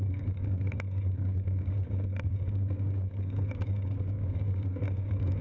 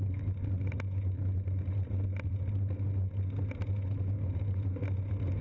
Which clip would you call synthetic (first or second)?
first